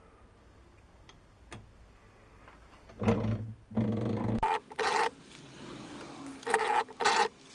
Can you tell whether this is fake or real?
real